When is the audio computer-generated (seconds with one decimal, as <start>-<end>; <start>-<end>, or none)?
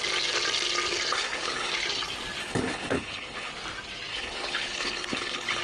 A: 1.1-1.7; 2.4-3.5; 4.1-5.6